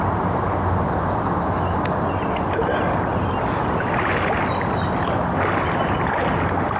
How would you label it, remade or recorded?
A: recorded